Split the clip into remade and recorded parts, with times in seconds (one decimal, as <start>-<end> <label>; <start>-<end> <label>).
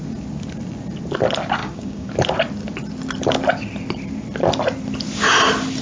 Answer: 0.0-1.6 recorded; 1.6-2.1 remade; 2.1-5.8 recorded